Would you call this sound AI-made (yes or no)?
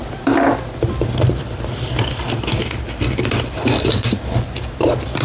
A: yes